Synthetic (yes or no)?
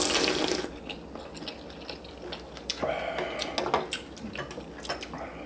no